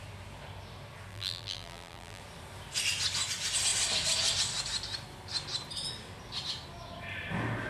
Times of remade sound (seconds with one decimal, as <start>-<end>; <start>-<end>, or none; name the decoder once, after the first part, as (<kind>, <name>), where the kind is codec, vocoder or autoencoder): 1.1-2.2 (vocoder, BigVGAN v2)